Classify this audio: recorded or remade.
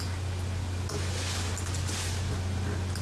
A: recorded